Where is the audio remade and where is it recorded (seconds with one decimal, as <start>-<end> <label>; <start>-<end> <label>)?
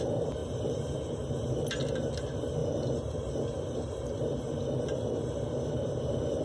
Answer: 0.0-6.4 recorded